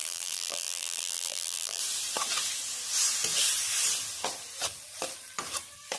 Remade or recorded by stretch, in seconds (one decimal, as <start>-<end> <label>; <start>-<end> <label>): 0.0-1.8 remade; 1.8-6.0 recorded